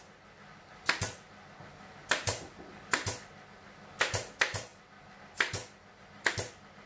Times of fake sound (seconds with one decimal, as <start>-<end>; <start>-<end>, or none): none